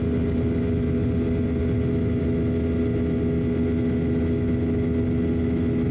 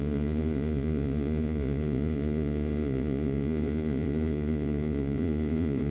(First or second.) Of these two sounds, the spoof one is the second